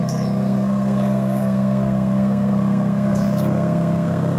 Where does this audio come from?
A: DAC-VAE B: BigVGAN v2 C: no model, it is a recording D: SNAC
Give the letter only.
D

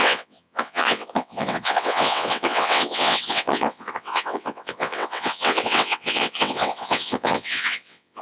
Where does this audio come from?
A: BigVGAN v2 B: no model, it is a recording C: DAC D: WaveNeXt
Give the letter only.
D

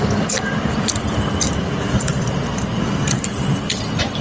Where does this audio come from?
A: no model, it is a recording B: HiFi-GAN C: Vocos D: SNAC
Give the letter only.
A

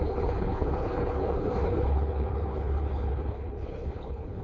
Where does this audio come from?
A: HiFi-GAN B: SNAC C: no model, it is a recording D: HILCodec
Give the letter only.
D